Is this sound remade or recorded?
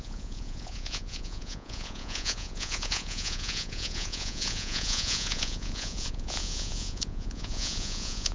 remade